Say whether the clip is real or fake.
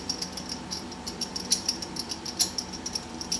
fake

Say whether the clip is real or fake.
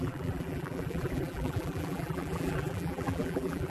fake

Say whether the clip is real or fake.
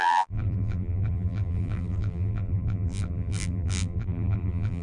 fake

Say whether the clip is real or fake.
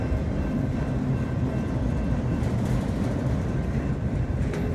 fake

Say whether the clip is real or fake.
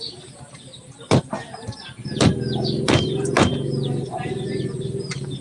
real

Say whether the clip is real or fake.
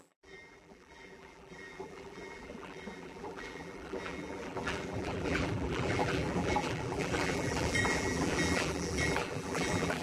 fake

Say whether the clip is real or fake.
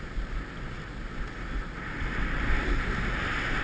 real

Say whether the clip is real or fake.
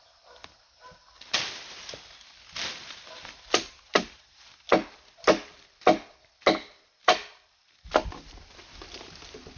real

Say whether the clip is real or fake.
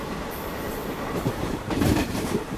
fake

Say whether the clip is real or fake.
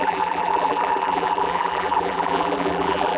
fake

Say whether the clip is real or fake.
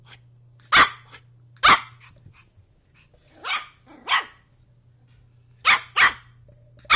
real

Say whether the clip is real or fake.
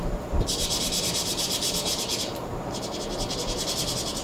real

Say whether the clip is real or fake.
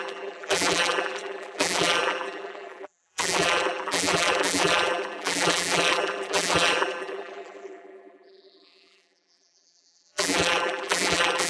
fake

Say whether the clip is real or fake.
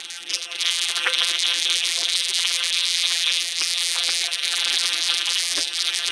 fake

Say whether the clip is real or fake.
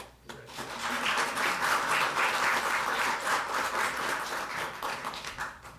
fake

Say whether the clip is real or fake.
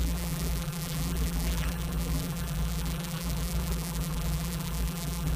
fake